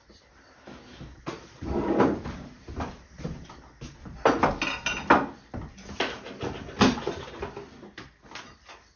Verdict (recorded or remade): recorded